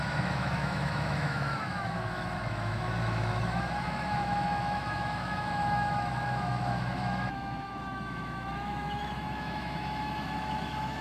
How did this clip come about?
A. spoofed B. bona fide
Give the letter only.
A